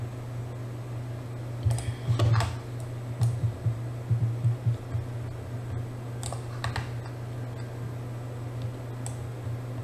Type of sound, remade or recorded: recorded